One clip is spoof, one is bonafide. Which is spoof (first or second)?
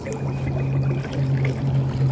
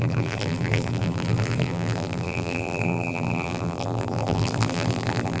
second